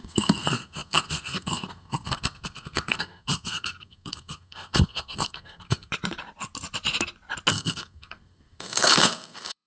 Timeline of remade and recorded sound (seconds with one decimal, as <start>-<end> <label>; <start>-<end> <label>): 0.0-5.9 remade; 5.9-7.5 recorded; 7.5-9.7 remade